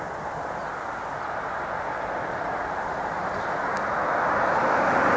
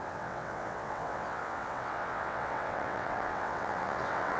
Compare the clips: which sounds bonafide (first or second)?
first